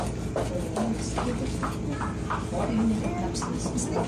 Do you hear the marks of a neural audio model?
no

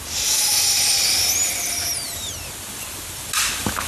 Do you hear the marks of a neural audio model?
no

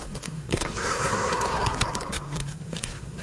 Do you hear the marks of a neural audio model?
yes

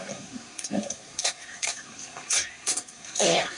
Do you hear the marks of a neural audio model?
yes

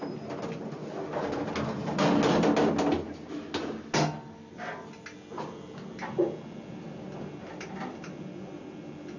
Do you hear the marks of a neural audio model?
no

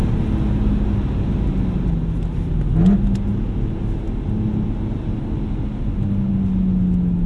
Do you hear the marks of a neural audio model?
no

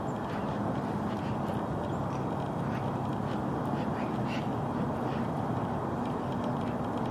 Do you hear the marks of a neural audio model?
no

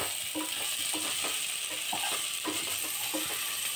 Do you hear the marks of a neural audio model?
no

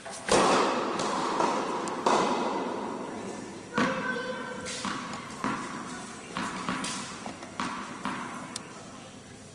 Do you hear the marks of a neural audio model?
no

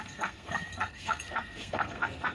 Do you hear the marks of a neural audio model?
yes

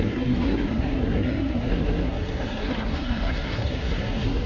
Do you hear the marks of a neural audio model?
yes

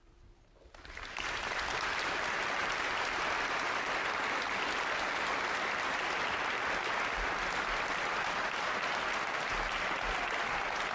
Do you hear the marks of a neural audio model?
no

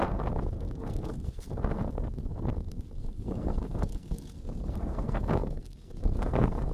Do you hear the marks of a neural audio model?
yes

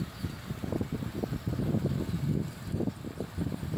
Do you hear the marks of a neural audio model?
no